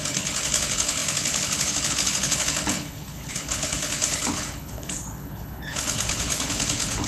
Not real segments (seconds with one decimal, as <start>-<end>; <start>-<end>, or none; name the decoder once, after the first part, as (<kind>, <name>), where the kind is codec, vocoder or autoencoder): 0.0-7.1 (codec, HILCodec)